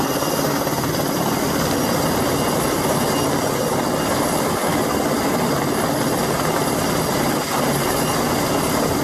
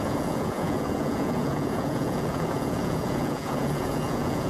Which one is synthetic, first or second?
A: second